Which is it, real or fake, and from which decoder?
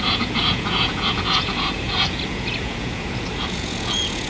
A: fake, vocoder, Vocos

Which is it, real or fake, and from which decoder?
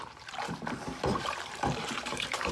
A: fake, vocoder, BigVGAN v2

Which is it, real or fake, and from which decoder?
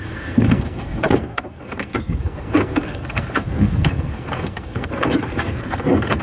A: fake, codec, SNAC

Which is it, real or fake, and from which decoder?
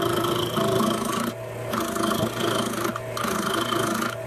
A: real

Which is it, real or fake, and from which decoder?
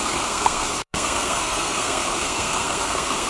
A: fake, codec, SNAC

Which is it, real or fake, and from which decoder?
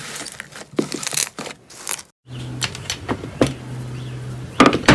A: real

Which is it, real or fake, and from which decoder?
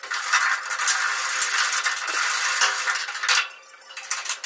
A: real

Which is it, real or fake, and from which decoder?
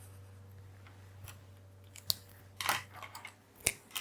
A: real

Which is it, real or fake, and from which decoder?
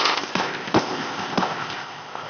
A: fake, codec, ZipCodec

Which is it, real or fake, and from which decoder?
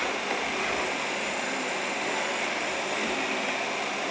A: fake, vocoder, BigVGAN v2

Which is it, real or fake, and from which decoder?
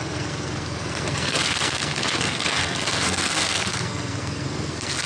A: fake, codec, SNAC